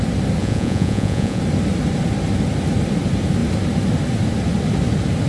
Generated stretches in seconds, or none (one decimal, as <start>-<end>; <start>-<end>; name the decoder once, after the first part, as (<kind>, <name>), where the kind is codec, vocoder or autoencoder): 0.4-1.4 (vocoder, Vocos)